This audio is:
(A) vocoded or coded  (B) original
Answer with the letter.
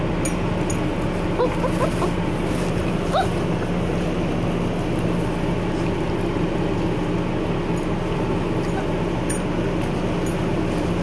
B